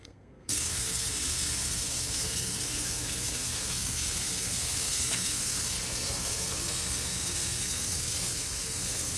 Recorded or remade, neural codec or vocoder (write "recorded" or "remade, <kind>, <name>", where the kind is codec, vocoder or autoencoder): remade, codec, SNAC